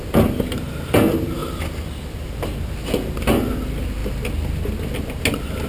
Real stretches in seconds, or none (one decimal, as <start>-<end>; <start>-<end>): 0.0-5.7